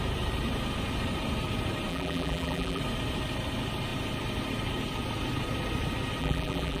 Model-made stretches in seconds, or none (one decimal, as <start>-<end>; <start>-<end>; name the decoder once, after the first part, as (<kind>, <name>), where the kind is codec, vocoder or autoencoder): 1.9-2.8 (vocoder, BigVGAN v2); 6.2-6.8

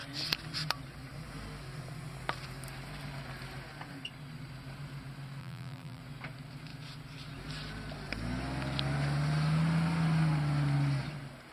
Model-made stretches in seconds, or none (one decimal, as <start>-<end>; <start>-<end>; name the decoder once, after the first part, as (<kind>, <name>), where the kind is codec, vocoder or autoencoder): 5.4-6.0 (vocoder, BigVGAN v2)

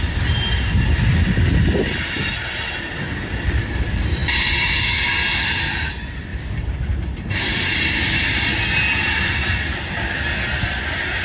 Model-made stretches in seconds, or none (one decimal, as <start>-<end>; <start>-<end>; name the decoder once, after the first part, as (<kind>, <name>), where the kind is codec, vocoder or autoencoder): 6.3-8.7 (vocoder, BigVGAN v2)

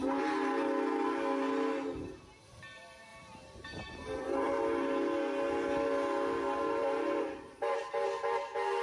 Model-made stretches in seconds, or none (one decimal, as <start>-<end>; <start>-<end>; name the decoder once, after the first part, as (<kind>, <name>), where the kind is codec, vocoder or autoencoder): 3.1-4.6 (vocoder, BigVGAN v2); 6.8-7.8

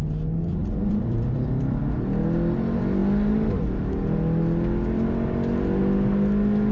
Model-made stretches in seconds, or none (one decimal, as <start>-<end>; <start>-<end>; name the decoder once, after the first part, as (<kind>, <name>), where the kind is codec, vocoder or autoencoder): 0.6-1.8 (vocoder, BigVGAN v2)

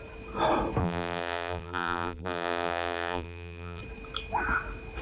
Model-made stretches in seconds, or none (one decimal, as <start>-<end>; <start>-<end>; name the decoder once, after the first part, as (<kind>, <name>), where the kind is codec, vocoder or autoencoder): 0.8-3.8 (vocoder, BigVGAN v2)

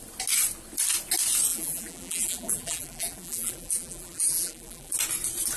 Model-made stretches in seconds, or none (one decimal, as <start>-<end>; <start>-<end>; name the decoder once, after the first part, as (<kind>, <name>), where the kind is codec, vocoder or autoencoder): 1.5-4.9 (vocoder, BigVGAN v2)